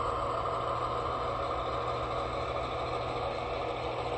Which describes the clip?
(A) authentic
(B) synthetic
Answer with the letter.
A